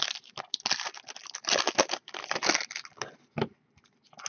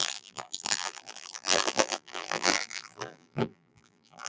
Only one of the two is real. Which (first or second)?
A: first